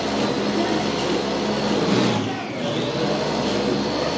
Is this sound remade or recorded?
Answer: recorded